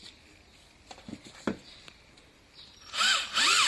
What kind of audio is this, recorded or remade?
remade